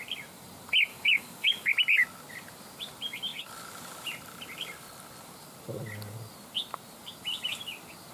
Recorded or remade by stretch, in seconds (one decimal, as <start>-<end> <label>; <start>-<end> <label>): 0.0-0.9 recorded; 0.9-1.7 remade; 1.7-8.1 recorded